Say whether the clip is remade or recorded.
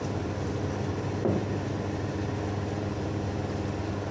recorded